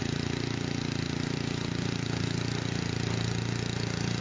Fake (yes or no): no